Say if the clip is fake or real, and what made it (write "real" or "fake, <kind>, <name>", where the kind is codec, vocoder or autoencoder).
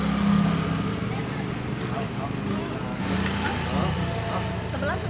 real